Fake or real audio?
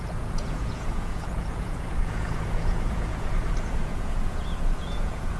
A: fake